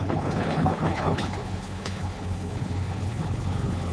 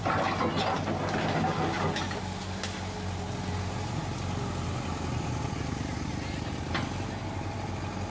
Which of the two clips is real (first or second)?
second